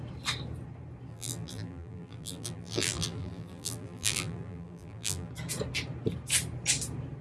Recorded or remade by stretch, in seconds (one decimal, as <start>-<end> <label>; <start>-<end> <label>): 0.0-1.1 recorded; 1.1-5.3 remade; 5.3-7.2 recorded